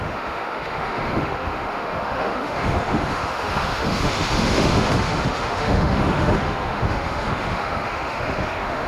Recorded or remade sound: remade